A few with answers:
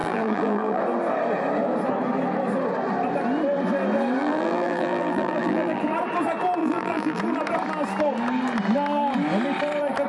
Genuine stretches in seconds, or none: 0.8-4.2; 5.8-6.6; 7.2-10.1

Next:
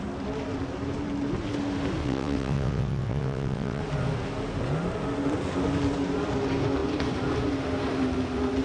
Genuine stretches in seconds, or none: 0.0-2.0; 3.8-8.6

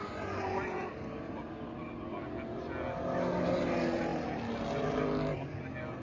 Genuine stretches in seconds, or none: 0.0-0.8; 1.4-4.1; 5.6-6.0

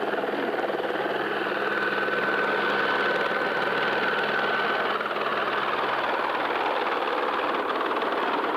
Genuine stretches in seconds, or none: 0.0-8.6

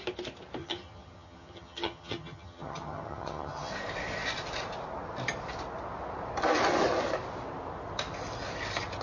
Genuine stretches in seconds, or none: 0.0-0.6; 3.7-9.0

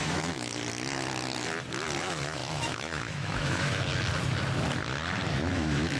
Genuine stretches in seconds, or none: 0.5-2.0; 3.9-5.3

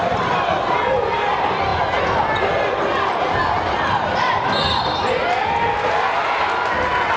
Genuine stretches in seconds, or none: 0.0-7.2